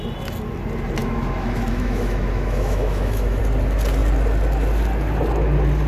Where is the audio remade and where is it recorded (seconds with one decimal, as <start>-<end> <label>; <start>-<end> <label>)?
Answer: 0.0-1.0 recorded; 1.0-3.4 remade; 3.4-5.9 recorded